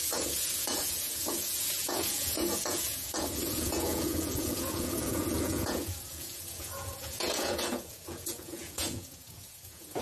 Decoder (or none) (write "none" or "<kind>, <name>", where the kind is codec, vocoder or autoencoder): vocoder, Vocos